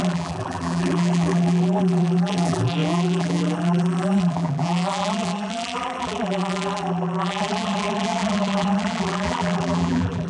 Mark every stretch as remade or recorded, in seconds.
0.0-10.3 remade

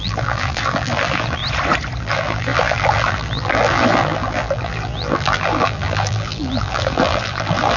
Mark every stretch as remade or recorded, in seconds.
0.0-1.4 remade; 1.4-2.0 recorded; 2.0-7.8 remade

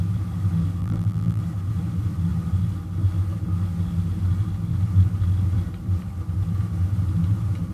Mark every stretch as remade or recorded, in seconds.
0.0-0.8 recorded; 0.8-1.4 remade; 1.4-7.7 recorded

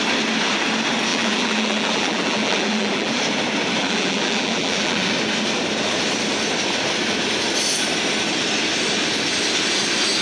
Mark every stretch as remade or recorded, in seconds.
0.0-1.1 recorded; 1.1-3.2 remade; 3.2-3.8 recorded; 3.8-5.1 remade; 5.1-10.2 recorded

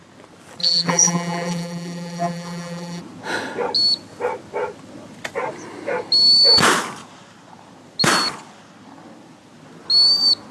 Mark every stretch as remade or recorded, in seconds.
0.0-0.6 recorded; 0.6-3.0 remade; 3.0-10.5 recorded

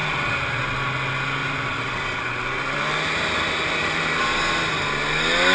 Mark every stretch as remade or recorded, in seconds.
0.0-0.6 remade; 0.6-1.4 recorded; 1.4-4.2 remade; 4.2-5.5 recorded